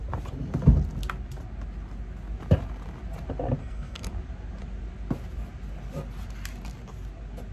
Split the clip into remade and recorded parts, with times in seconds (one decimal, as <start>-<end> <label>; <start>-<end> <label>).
0.0-3.6 recorded; 3.6-4.1 remade; 4.1-7.5 recorded